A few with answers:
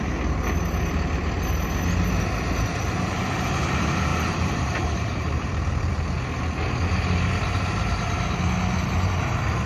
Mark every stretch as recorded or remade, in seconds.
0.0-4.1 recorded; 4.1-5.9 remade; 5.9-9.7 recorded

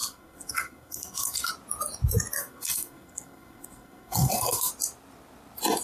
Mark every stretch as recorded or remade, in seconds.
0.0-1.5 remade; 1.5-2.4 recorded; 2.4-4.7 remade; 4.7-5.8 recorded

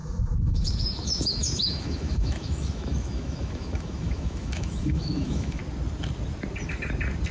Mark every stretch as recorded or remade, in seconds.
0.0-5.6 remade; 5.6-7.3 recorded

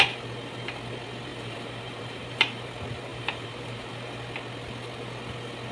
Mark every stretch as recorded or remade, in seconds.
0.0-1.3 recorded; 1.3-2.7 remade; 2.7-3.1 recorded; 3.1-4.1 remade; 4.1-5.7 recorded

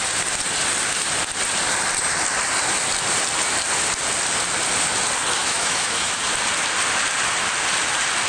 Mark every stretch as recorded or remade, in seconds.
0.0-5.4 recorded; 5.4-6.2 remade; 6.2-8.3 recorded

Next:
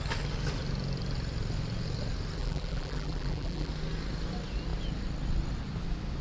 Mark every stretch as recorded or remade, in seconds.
0.0-2.4 recorded; 2.4-3.7 remade; 3.7-6.2 recorded